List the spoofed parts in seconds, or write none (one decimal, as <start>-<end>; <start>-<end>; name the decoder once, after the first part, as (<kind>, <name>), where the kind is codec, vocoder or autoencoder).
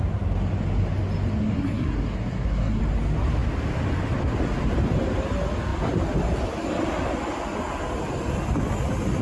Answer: 1.4-2.8 (codec, SNAC)